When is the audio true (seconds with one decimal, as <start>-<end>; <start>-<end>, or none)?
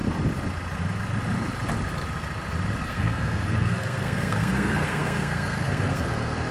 0.0-2.8